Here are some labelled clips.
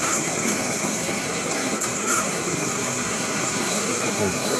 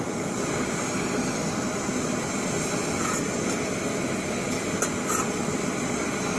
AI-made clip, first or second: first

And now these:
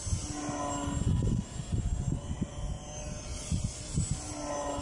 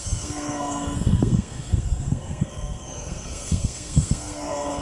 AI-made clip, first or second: second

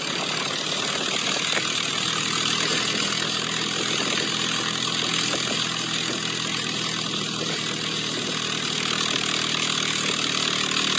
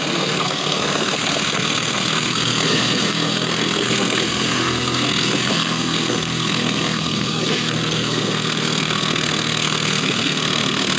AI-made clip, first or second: second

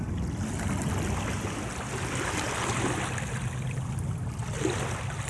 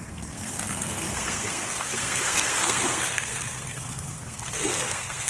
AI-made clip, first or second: second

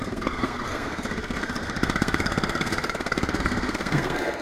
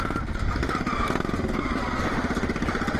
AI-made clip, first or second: first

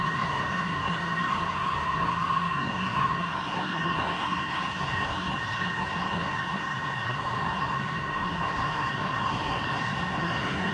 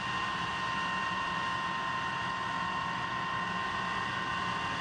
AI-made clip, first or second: first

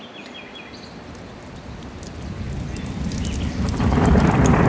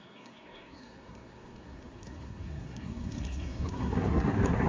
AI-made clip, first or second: second